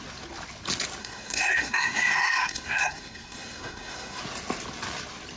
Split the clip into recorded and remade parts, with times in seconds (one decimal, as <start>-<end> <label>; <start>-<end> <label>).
0.0-1.0 recorded; 1.0-4.2 remade; 4.2-5.4 recorded